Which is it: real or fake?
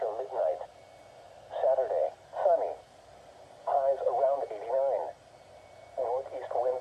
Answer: real